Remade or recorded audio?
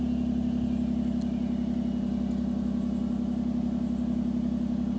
recorded